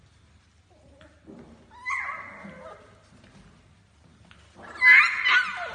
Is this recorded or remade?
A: recorded